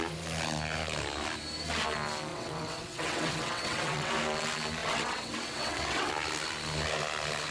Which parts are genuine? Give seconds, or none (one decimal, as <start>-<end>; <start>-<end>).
0.0-2.3; 4.1-4.8; 6.1-7.5